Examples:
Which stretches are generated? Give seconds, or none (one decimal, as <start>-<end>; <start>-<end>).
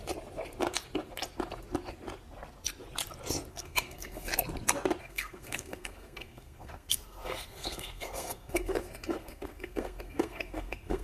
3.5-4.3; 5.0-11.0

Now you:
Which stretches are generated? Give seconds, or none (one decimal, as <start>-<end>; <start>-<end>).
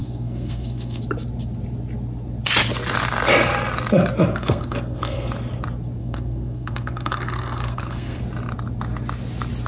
0.0-1.0; 4.3-5.3; 6.0-8.2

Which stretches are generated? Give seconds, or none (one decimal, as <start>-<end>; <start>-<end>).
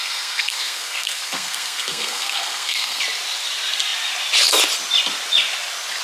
0.0-3.0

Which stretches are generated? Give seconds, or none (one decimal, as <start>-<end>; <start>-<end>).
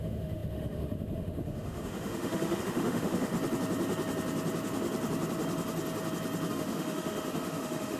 0.0-3.3; 6.5-8.0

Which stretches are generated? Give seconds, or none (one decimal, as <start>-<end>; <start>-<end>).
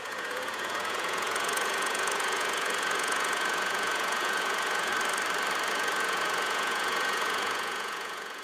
0.0-4.9; 5.7-8.4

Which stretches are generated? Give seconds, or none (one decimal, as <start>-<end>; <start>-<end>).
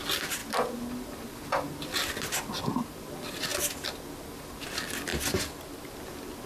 none